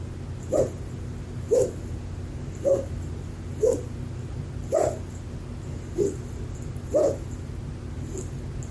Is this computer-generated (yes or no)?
no